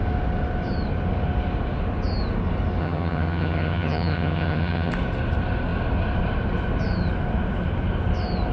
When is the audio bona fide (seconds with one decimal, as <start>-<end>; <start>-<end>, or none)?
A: 0.0-2.8; 4.9-8.5